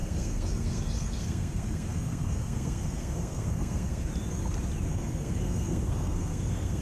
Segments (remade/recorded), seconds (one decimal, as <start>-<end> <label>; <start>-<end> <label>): 0.0-4.1 remade; 4.1-4.9 recorded; 4.9-6.8 remade